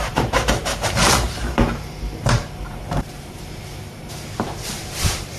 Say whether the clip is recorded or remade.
remade